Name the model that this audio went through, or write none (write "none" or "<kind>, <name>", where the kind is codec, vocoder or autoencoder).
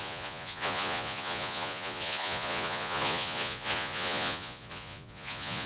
vocoder, Vocos